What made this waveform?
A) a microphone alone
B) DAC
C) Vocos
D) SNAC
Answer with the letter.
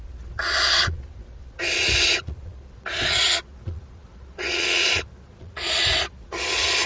C